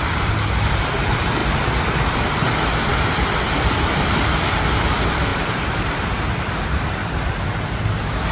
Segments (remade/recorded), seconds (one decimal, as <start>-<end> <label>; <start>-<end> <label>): 0.0-5.3 recorded; 5.3-7.2 remade; 7.2-8.3 recorded